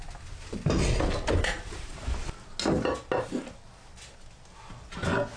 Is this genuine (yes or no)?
yes